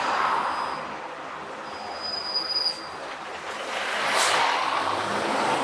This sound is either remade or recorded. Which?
recorded